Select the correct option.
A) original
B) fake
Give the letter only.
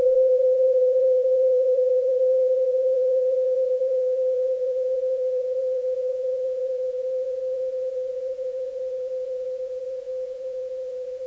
B